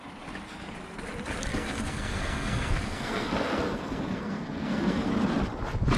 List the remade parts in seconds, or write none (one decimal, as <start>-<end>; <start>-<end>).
1.5-5.1